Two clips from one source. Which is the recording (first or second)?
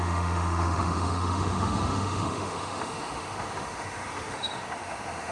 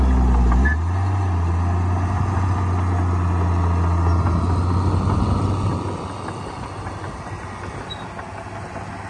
second